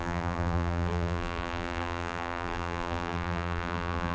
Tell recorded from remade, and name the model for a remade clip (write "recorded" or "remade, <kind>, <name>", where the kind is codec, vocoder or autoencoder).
remade, vocoder, BigVGAN v2